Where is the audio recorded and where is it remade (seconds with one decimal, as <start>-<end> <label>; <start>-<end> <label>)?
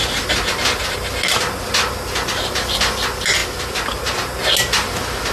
0.0-5.3 recorded